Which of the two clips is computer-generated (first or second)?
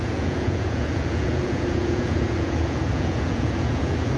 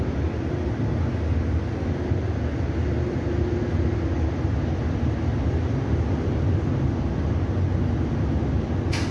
first